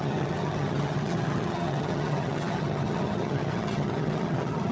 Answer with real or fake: fake